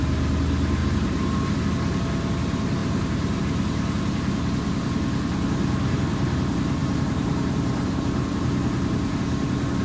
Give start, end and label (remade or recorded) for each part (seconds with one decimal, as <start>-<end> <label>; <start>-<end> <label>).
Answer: 0.0-0.8 recorded; 0.8-1.5 remade; 1.5-2.8 recorded; 2.8-3.4 remade; 3.4-6.8 recorded; 6.8-9.2 remade; 9.2-9.8 recorded